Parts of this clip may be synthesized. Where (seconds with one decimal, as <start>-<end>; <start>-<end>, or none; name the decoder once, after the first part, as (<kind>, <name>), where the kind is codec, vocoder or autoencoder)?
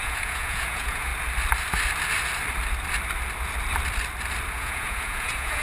0.0-1.1 (vocoder, Vocos); 4.5-5.6